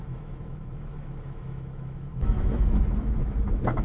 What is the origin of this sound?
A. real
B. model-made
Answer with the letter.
B